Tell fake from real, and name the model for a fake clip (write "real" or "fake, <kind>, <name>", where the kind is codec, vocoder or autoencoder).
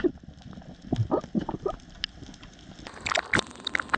real